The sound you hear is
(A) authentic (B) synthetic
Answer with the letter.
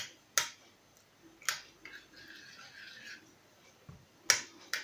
A